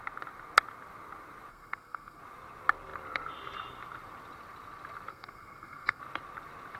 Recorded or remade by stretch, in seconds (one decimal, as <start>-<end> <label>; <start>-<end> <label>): 0.0-1.5 recorded; 1.5-2.2 remade; 2.2-5.1 recorded; 5.1-6.0 remade; 6.0-6.8 recorded